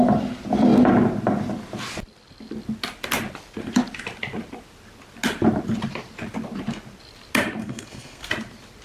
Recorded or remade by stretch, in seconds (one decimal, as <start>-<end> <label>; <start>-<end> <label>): 0.0-7.6 recorded; 7.6-8.3 remade; 8.3-8.8 recorded